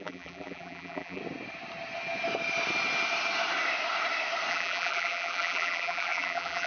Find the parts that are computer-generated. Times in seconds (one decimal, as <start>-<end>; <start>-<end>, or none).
0.0-1.2; 4.5-6.7